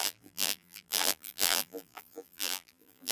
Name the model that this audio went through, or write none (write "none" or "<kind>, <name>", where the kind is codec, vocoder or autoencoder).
vocoder, BigVGAN v2